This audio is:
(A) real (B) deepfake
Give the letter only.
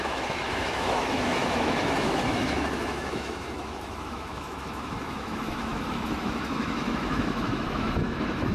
B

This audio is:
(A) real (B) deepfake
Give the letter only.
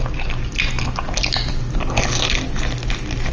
A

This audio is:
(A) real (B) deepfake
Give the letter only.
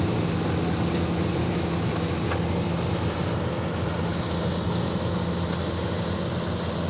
A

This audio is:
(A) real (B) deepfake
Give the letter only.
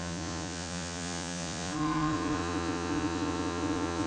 B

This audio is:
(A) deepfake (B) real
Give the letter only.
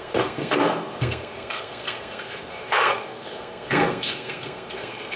A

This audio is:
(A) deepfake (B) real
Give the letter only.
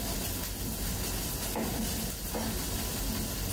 B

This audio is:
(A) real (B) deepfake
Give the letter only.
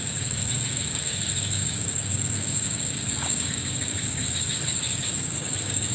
B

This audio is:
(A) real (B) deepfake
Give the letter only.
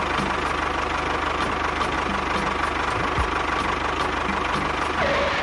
A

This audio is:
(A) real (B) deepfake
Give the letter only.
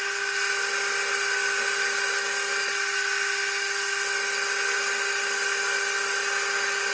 A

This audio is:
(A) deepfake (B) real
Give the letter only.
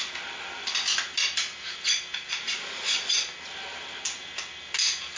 B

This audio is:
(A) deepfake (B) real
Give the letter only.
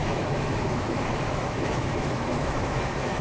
A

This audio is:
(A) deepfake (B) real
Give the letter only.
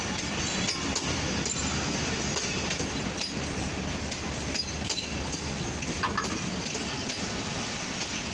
B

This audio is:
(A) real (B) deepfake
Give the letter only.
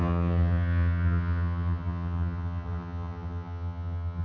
B